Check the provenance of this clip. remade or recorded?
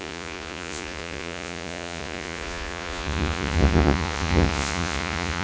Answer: remade